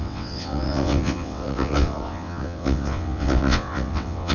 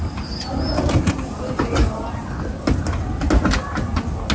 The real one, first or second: second